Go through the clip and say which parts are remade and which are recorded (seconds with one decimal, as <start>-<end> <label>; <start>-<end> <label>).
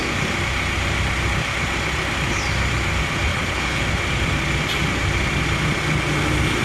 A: 0.0-3.3 recorded; 3.3-3.8 remade; 3.8-6.6 recorded